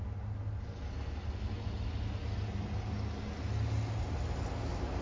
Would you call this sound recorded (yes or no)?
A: yes